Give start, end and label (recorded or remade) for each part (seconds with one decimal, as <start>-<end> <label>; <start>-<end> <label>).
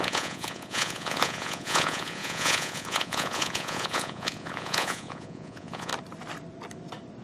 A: 0.0-5.9 remade; 5.9-7.2 recorded